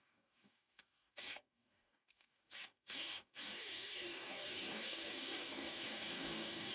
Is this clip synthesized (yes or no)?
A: yes